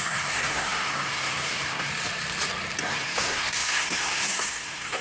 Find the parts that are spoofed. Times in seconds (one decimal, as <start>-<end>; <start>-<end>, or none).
0.0-1.9; 2.8-5.0